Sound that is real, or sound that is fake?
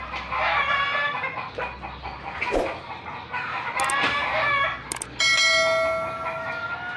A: real